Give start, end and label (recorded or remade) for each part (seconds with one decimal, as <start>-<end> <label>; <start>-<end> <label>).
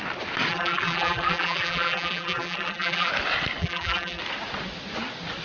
0.0-0.5 recorded; 0.5-3.1 remade; 3.1-3.6 recorded; 3.6-4.2 remade; 4.2-5.4 recorded